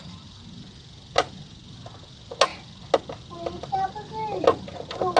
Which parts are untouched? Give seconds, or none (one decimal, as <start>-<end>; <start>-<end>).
0.0-5.2